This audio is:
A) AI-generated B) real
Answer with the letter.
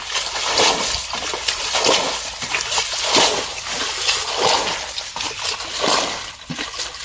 B